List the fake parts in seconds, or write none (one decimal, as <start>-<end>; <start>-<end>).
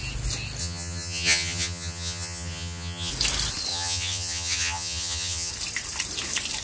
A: 0.6-3.1; 3.7-5.5